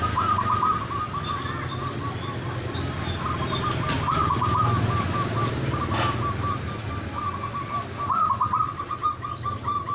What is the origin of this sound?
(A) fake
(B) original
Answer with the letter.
B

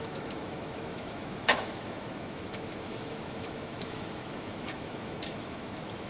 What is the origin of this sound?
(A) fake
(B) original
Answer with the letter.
A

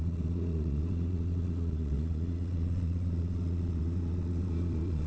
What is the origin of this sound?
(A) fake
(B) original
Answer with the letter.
A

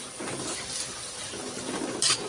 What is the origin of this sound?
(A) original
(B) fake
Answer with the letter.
B